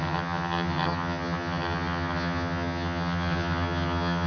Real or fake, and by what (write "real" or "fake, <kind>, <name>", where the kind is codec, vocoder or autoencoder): fake, vocoder, HiFi-GAN